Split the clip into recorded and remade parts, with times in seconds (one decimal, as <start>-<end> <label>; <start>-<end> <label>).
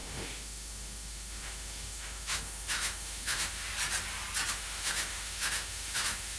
0.0-3.7 remade; 3.7-4.5 recorded; 4.5-6.4 remade